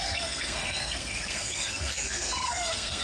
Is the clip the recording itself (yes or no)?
no